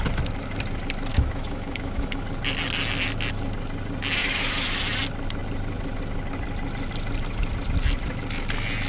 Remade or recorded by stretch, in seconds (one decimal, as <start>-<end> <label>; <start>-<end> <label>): 0.0-1.1 recorded; 1.1-2.2 remade; 2.2-4.2 recorded; 4.2-4.8 remade; 4.8-8.9 recorded